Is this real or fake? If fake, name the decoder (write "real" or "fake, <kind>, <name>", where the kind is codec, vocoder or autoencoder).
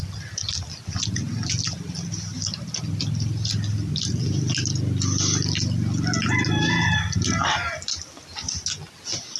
real